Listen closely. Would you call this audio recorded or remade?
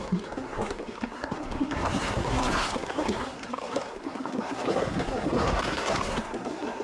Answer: remade